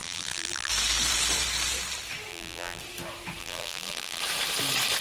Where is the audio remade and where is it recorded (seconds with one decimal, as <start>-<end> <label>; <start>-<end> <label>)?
0.0-0.7 remade; 0.7-2.3 recorded; 2.3-2.8 remade; 2.8-3.4 recorded; 3.4-4.2 remade; 4.2-5.0 recorded